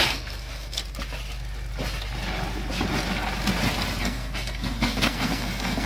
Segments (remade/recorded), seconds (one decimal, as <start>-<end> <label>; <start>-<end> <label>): 0.0-0.8 remade; 0.8-4.0 recorded; 4.0-5.9 remade